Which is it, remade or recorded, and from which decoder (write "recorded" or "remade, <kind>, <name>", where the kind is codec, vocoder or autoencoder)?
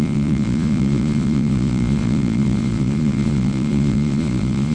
remade, vocoder, Vocos